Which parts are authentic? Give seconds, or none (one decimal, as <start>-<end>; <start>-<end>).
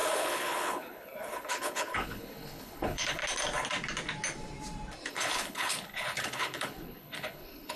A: 3.2-5.1